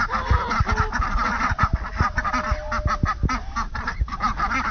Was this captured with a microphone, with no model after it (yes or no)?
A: yes